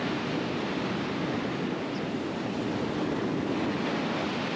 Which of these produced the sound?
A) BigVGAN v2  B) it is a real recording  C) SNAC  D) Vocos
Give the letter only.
B